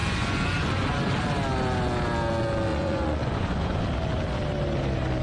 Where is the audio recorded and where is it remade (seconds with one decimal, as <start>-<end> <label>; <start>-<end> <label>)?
0.0-1.0 remade; 1.0-2.7 recorded; 2.7-3.8 remade; 3.8-5.2 recorded